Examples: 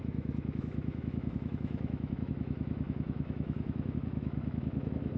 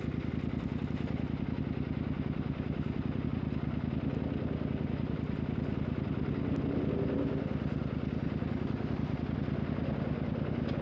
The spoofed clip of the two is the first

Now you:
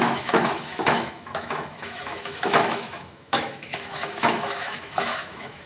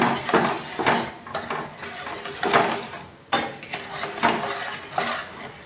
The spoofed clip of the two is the first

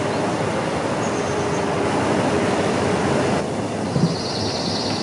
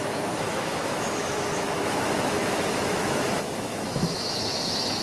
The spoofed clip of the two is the second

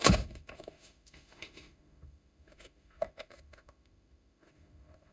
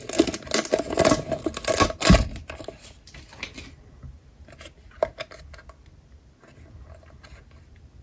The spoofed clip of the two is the first